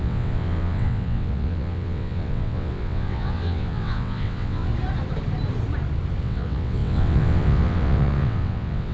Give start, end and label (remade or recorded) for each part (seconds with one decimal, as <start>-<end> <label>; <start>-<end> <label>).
0.0-4.7 remade; 4.7-6.2 recorded; 6.2-8.9 remade